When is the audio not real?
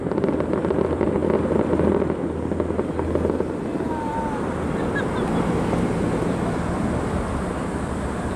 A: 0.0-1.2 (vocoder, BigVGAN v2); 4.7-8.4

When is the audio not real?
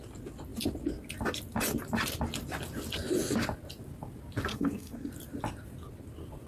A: 4.5-5.1 (codec, SNAC)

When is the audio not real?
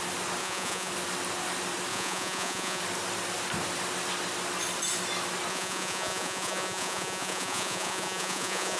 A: 0.4-0.9 (vocoder, Vocos); 1.9-2.8; 5.5-8.8